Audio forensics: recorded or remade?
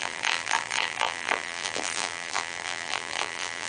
remade